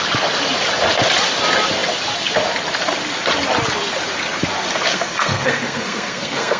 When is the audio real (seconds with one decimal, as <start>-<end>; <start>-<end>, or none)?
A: 0.0-4.9